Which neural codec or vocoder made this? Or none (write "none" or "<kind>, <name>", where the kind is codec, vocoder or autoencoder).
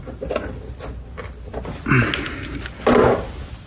none